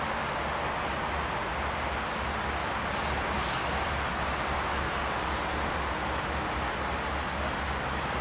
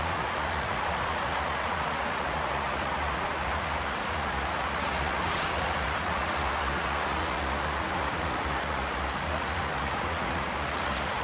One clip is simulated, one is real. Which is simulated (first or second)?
second